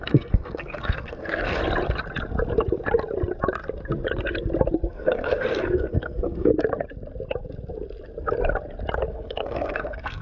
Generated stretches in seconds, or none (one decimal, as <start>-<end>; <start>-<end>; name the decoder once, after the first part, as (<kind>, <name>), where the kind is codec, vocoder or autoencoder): 0.0-1.6 (codec, SNAC); 4.9-6.5; 9.1-10.2